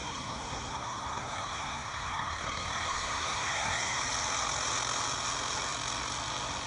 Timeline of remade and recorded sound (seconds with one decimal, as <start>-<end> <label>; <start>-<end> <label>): 0.0-4.0 remade; 4.0-6.7 recorded